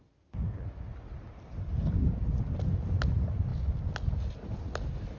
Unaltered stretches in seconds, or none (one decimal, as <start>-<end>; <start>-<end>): 0.0-5.2